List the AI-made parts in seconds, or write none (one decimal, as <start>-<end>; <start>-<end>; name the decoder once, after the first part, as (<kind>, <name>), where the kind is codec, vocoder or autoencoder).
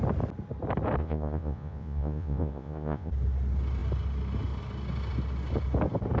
1.0-3.1 (vocoder, Vocos)